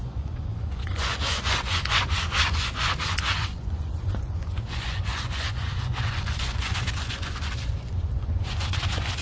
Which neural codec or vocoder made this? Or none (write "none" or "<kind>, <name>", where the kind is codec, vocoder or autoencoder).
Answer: vocoder, Vocos